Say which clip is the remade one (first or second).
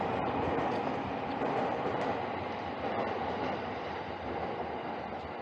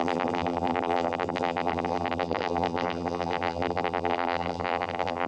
second